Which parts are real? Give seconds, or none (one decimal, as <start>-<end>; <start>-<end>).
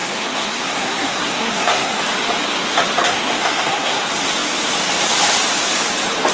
2.0-3.0; 4.0-6.3